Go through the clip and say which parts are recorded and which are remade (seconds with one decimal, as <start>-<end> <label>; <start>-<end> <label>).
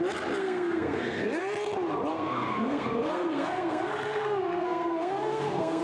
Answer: 0.0-0.4 recorded; 0.4-1.4 remade; 1.4-2.1 recorded; 2.1-5.8 remade